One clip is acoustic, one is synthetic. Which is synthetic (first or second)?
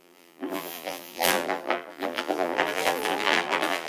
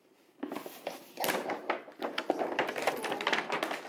first